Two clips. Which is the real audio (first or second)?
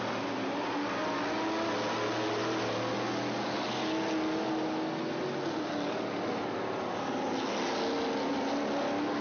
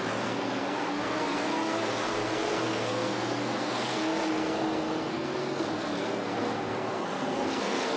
first